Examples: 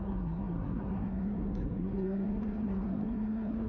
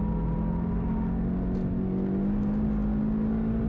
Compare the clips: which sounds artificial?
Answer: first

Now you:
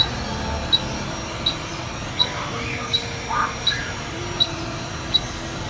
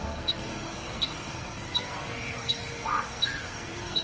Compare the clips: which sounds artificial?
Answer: second